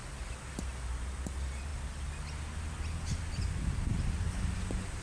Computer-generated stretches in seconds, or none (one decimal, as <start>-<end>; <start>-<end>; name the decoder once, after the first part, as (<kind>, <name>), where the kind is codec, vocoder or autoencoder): none